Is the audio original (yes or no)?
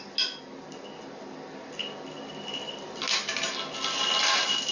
yes